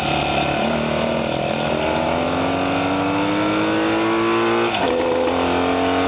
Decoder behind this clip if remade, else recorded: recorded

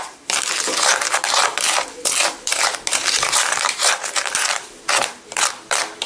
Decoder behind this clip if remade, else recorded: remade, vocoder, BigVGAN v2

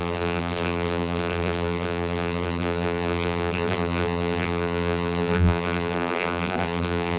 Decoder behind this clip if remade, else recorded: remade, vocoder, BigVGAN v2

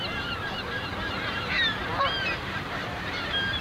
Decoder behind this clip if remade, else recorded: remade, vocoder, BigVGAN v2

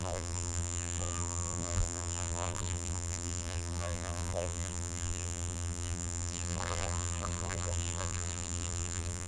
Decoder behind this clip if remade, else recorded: remade, vocoder, BigVGAN v2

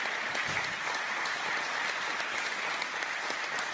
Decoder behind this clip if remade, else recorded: recorded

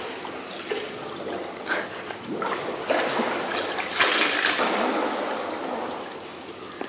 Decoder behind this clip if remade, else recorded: recorded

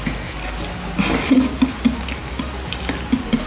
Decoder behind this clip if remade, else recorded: recorded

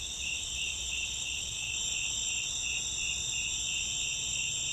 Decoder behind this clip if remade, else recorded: remade, vocoder, BigVGAN v2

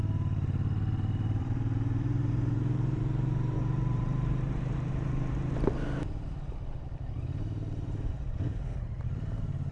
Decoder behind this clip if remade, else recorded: remade, vocoder, BigVGAN v2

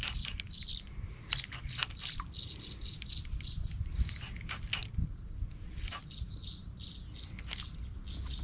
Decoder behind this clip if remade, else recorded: recorded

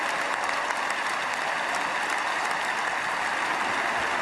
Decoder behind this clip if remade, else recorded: recorded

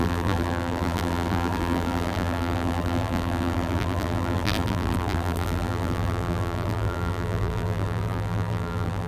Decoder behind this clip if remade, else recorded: remade, vocoder, BigVGAN v2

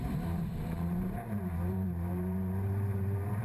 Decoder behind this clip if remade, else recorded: remade, vocoder, BigVGAN v2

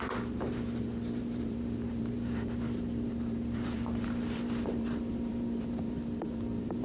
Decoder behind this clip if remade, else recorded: remade, vocoder, BigVGAN v2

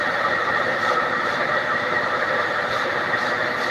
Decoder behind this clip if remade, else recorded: remade, vocoder, BigVGAN v2